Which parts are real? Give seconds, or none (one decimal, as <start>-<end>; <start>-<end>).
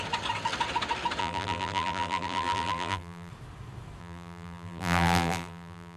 0.0-1.2; 3.3-4.0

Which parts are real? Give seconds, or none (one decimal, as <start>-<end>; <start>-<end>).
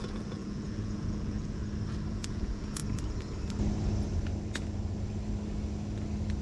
1.6-2.1; 2.8-6.4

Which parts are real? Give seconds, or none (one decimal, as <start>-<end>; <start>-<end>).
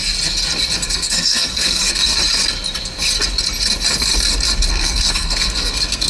0.0-0.8; 2.2-4.7